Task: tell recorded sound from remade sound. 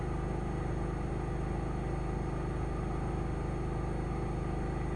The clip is recorded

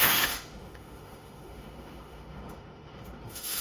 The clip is remade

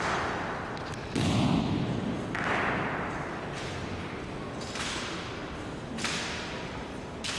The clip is recorded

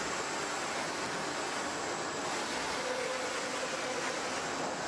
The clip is recorded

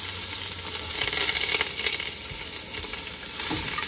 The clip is recorded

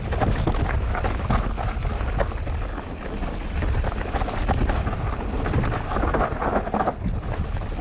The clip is recorded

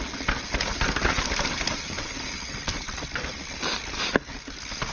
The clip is recorded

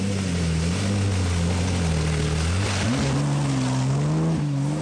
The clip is recorded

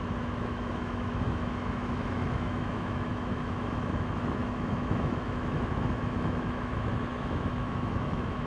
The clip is remade